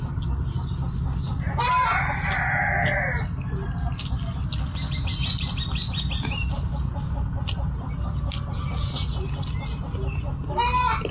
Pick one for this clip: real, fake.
real